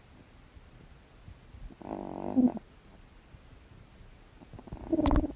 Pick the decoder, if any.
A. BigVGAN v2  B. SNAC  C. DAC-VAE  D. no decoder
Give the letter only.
D